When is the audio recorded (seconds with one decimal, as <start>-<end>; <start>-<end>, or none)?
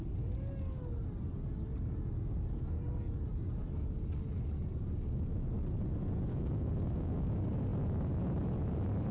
0.0-6.3; 7.3-9.1